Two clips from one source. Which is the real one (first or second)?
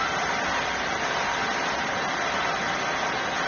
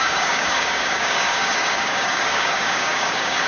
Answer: first